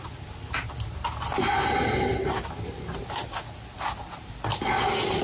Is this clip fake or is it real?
real